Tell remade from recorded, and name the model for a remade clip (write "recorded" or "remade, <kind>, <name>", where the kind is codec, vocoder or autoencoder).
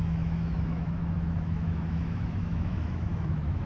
remade, autoencoder, DAC-VAE